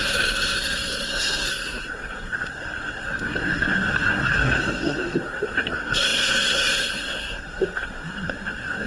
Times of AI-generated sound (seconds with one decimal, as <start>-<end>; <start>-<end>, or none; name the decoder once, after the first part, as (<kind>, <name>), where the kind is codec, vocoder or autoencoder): 0.0-8.9 (codec, SNAC)